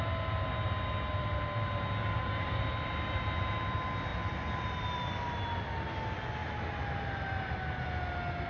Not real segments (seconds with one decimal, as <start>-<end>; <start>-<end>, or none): 2.0-2.6